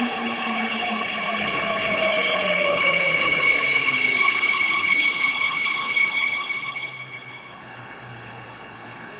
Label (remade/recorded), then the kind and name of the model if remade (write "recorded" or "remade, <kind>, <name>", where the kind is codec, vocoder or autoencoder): remade, codec, HILCodec